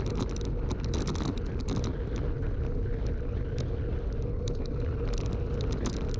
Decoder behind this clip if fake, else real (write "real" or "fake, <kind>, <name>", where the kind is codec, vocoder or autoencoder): real